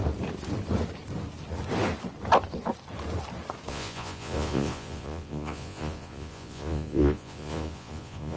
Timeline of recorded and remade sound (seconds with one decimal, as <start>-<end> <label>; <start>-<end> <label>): 0.0-3.7 recorded; 3.7-8.4 remade